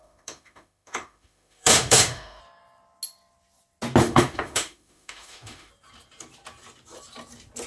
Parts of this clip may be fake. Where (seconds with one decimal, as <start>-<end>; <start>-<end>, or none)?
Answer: 0.0-2.4; 4.0-5.7